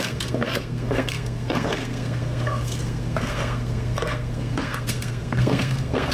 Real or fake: fake